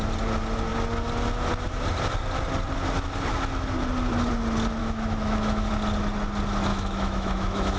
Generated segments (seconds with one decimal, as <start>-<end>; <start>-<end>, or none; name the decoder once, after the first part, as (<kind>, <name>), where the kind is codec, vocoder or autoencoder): 4.8-5.7 (autoencoder, DAC-VAE); 6.7-7.8